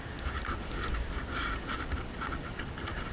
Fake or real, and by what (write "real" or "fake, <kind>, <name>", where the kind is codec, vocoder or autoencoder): real